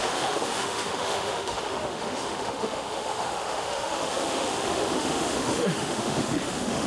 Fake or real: fake